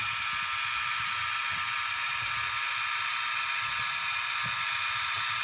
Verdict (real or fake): real